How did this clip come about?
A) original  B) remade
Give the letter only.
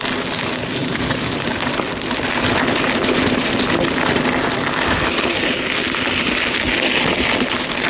A